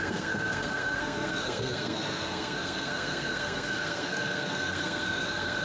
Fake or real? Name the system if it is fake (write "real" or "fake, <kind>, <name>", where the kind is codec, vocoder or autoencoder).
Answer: fake, codec, SNAC